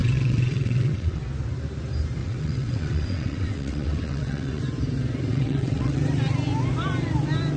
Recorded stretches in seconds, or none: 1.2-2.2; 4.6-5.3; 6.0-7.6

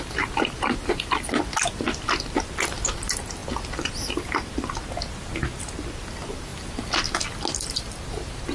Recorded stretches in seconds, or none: 0.0-8.5